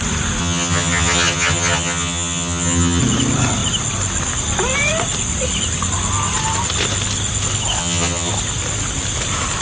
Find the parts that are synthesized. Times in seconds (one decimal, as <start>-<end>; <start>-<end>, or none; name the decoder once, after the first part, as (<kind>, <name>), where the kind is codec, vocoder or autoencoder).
0.4-3.0 (vocoder, HiFi-GAN); 7.8-8.3